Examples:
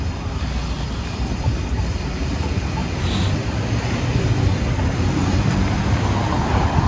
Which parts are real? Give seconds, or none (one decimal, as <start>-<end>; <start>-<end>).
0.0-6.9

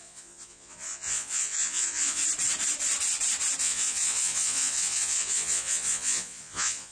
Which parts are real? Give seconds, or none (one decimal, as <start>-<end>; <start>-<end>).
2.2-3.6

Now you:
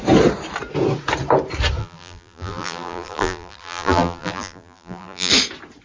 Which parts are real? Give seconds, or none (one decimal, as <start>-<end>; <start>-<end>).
0.0-1.8; 5.3-5.8

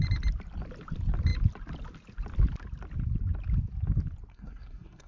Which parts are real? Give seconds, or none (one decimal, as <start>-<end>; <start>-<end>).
0.0-4.3